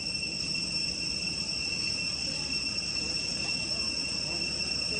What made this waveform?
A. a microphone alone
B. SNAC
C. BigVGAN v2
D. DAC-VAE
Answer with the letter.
A